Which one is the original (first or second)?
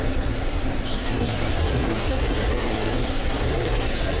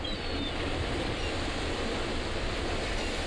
second